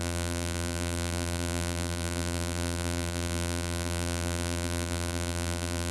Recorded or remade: remade